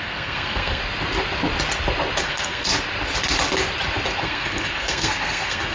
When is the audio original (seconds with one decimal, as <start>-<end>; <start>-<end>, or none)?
0.8-2.2; 2.7-4.2

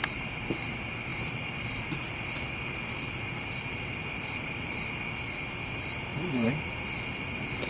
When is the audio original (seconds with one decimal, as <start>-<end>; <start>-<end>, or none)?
0.0-1.1; 4.8-7.7

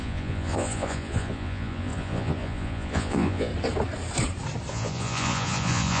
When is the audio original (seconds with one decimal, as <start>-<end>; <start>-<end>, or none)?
3.5-4.7

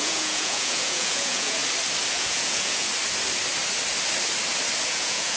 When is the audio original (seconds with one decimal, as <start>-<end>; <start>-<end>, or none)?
1.6-2.1; 2.9-4.9